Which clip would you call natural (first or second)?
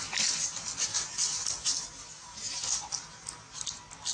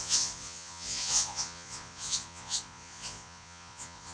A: first